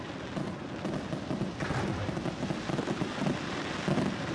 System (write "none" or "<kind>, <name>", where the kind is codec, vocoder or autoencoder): none